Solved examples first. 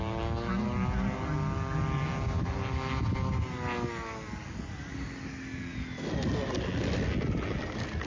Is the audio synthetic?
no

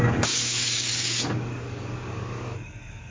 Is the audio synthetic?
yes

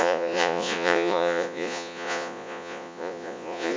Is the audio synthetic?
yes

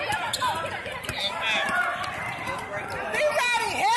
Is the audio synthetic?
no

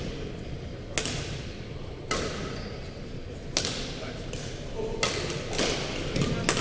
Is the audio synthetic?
no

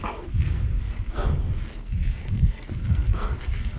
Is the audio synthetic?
yes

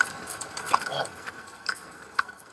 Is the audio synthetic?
yes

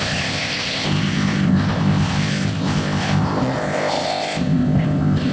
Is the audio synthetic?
yes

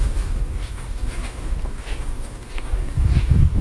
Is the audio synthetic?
yes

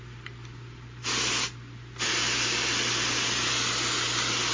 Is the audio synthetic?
no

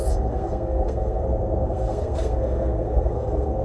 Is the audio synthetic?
yes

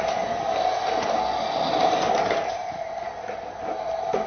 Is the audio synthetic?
no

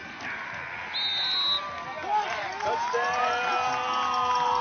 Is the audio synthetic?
no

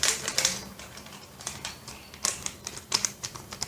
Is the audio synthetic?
yes